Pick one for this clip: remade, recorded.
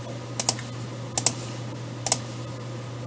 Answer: recorded